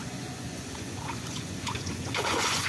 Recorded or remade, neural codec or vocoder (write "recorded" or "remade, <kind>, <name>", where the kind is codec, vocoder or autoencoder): remade, vocoder, Vocos